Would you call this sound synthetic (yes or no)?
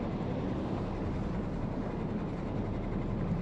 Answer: no